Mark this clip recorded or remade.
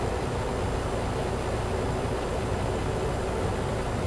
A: recorded